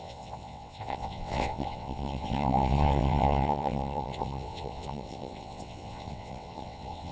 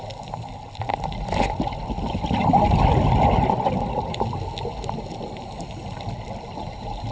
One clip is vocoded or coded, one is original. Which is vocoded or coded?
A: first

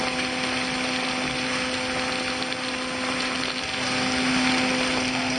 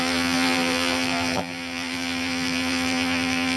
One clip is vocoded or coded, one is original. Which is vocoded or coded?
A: second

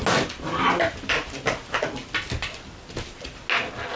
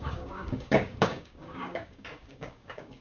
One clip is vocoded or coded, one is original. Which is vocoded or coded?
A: second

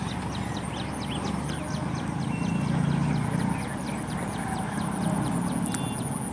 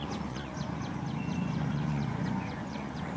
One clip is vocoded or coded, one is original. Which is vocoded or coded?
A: second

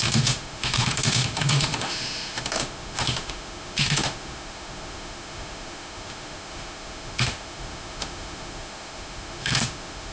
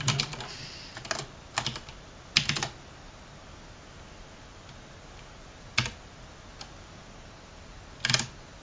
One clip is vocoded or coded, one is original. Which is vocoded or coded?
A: first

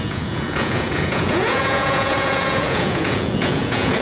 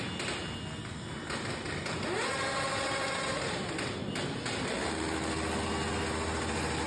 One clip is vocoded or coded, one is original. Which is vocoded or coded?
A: first